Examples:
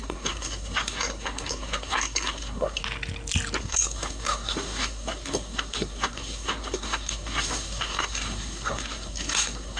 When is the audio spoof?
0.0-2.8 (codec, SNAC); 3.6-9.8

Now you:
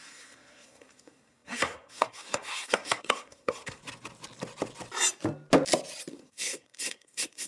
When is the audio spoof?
0.0-3.8 (codec, SNAC); 6.1-7.5

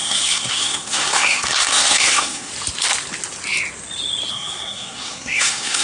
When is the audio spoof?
0.0-2.5 (codec, SNAC); 4.3-5.8

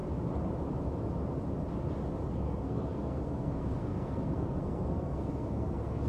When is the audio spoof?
2.3-6.1 (codec, SNAC)